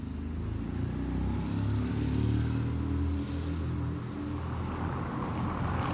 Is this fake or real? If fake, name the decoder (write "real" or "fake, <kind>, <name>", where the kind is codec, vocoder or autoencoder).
real